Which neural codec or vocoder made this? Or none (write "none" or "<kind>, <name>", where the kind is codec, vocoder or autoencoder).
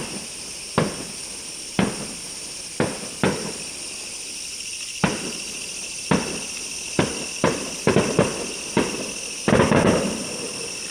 none